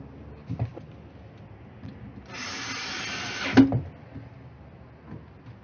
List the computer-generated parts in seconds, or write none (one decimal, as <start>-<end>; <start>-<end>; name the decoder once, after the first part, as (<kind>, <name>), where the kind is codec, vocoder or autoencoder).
none